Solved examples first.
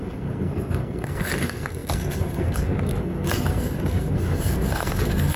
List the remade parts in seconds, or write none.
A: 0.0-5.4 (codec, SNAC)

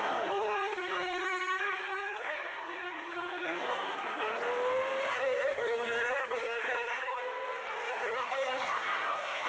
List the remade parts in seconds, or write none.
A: 0.0-4.4 (codec, SNAC); 5.1-7.2; 7.9-9.5

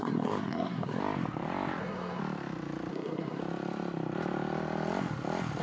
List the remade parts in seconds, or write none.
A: 0.0-1.0 (codec, SNAC); 1.8-2.2; 2.9-3.4

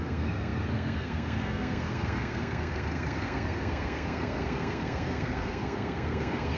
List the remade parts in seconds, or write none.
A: 0.0-6.6 (codec, SNAC)

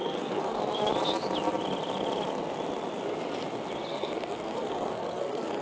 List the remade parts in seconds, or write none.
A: 0.0-0.6 (codec, SNAC); 3.9-5.6